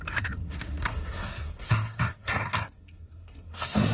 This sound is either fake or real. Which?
fake